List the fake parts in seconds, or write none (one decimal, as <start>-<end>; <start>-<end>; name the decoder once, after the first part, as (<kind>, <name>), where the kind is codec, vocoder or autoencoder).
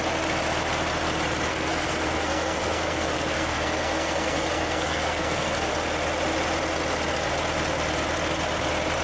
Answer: 1.5-5.7 (codec, SNAC)